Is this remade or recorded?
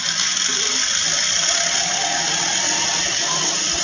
recorded